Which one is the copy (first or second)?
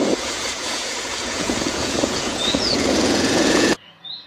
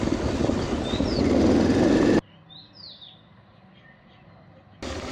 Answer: first